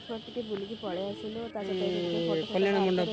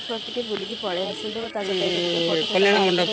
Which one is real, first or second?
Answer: first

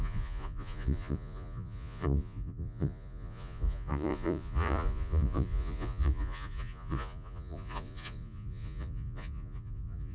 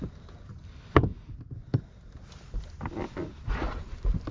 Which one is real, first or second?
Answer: second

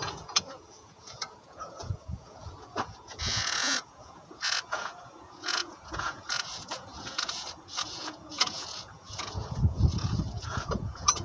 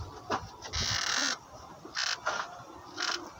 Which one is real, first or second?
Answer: second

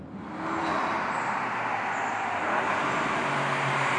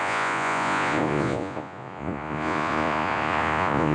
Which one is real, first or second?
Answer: first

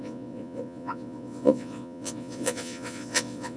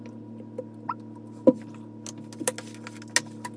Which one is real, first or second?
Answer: second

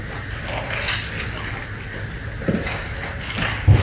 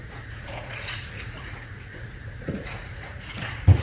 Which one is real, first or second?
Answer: first